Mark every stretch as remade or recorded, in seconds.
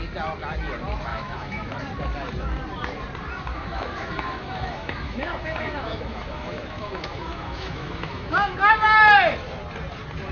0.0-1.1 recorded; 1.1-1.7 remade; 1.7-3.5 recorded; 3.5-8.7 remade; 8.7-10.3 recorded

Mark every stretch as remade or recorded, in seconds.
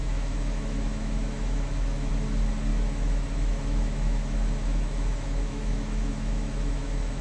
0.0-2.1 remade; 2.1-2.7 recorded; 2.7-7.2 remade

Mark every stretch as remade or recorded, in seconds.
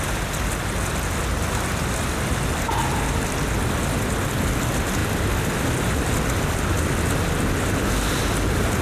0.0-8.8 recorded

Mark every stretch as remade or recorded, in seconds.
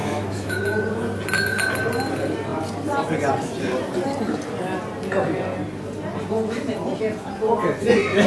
0.0-0.6 remade; 0.6-8.3 recorded